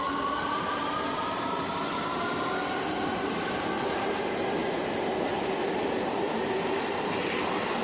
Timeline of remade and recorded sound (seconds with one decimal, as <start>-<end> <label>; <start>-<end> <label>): 0.0-2.1 remade; 2.1-2.8 recorded; 2.8-7.8 remade